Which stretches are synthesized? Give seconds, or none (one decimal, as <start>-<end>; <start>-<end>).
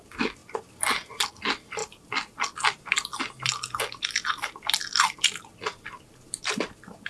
none